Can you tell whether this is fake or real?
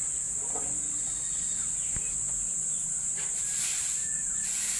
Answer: real